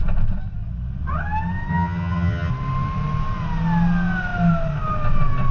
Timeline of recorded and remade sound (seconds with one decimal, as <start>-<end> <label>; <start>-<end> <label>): 0.0-1.7 recorded; 1.7-2.5 remade; 2.5-5.5 recorded